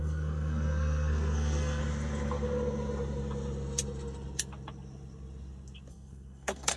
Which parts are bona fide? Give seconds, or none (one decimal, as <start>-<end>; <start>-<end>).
1.8-5.9